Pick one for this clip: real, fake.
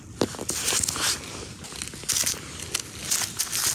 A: real